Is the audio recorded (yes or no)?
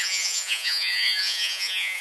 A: no